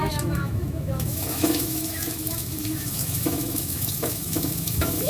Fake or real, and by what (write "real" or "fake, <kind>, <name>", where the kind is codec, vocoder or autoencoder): fake, autoencoder, DAC-VAE